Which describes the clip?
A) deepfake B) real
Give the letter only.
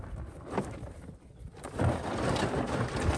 B